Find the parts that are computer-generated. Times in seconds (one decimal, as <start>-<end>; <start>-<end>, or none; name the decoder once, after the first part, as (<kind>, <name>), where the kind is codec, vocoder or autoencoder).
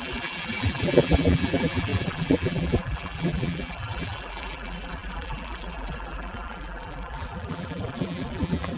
0.0-8.8 (vocoder, BigVGAN v2)